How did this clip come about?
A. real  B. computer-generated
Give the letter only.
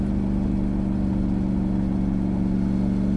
A